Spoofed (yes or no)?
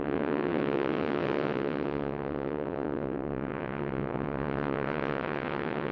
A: yes